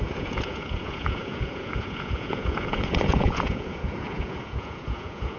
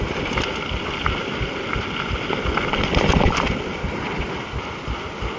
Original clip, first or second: second